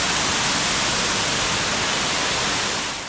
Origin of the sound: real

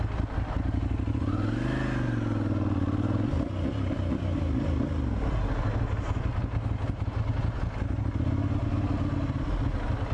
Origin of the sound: real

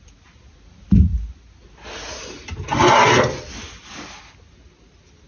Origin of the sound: real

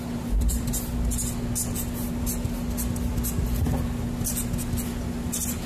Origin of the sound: real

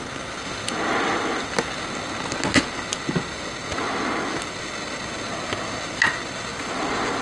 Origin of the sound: real